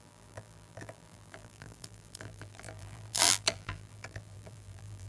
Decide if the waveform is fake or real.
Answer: fake